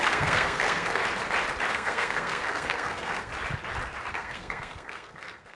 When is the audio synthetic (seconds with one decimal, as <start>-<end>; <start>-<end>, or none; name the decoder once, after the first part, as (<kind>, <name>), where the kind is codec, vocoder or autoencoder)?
0.0-1.0 (codec, SNAC); 1.7-3.3; 4.1-5.5